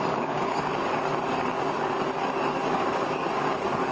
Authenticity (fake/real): fake